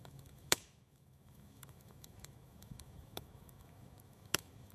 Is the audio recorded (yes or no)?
no